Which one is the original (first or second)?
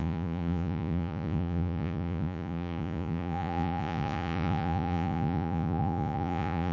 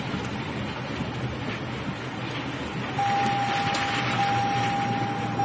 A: second